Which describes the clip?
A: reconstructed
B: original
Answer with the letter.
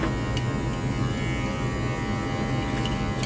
B